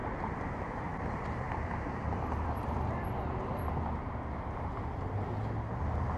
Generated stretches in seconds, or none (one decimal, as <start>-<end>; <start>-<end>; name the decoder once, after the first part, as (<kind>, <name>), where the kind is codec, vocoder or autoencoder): 0.0-3.7 (vocoder, BigVGAN v2)